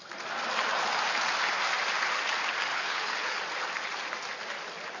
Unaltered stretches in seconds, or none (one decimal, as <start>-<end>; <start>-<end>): 0.0-2.7; 3.4-5.0